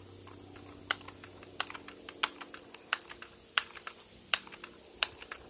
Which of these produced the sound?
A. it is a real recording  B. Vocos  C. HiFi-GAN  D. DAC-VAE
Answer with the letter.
A